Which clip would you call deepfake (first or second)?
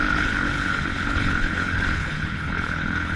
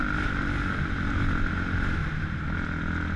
first